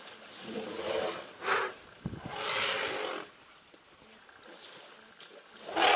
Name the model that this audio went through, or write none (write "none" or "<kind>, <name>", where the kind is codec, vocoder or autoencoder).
vocoder, BigVGAN v2